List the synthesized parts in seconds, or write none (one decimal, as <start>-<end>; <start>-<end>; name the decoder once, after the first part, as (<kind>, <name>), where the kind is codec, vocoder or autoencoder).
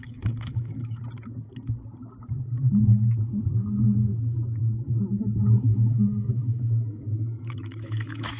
0.0-1.0 (autoencoder, DAC-VAE); 4.6-8.4